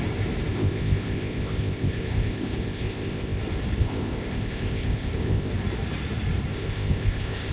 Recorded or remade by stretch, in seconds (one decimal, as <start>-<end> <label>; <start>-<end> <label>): 0.0-0.5 recorded; 0.5-3.4 remade; 3.4-3.8 recorded; 3.8-5.5 remade; 5.5-6.5 recorded; 6.5-7.5 remade